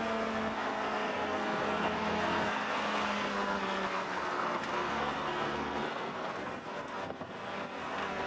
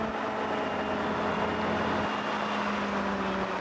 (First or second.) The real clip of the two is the second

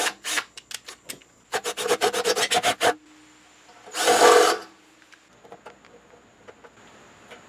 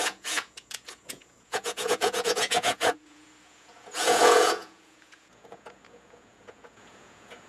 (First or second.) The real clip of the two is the first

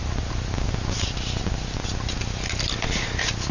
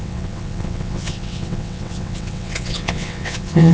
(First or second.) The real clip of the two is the first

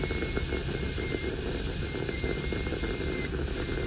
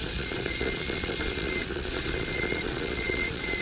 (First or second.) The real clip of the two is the first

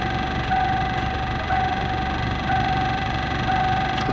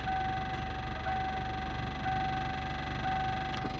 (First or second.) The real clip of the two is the second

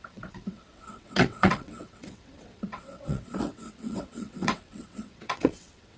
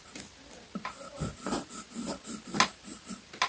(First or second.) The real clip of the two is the second